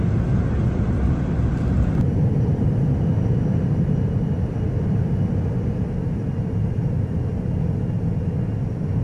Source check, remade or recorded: recorded